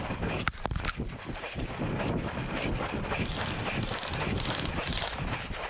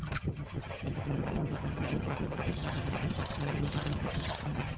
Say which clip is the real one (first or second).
first